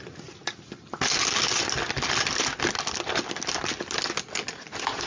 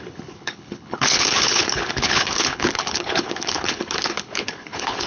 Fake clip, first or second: second